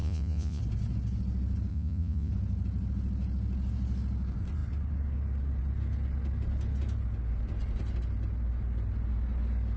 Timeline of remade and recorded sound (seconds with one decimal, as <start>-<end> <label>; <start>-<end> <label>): 0.0-0.6 remade; 0.6-1.7 recorded; 1.7-2.3 remade; 2.3-9.8 recorded